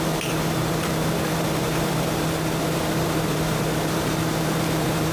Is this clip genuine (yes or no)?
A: no